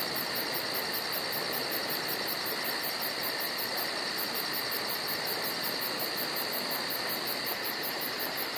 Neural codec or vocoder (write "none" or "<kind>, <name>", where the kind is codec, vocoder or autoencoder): none